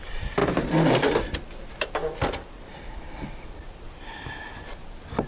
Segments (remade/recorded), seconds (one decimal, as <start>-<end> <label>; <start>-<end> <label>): 0.0-5.3 recorded